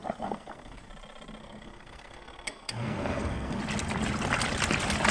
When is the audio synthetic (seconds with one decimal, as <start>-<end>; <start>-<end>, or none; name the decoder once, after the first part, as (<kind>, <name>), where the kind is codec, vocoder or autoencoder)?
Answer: 0.0-0.9 (codec, SNAC); 1.4-3.6